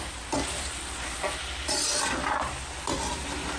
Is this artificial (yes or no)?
no